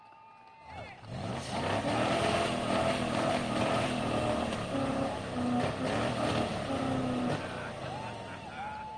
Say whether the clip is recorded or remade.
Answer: recorded